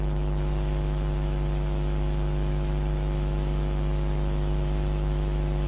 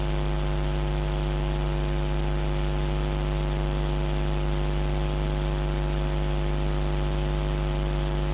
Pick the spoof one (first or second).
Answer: first